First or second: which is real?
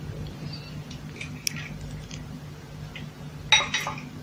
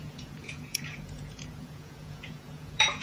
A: first